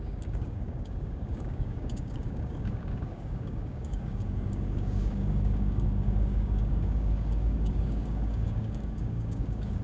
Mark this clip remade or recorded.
remade